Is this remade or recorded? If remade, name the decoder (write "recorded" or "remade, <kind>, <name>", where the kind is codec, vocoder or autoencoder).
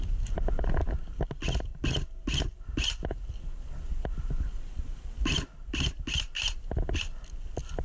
recorded